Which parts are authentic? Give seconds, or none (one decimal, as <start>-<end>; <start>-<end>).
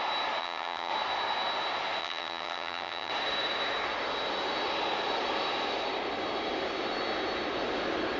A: 0.0-0.4; 0.9-2.0; 3.1-8.2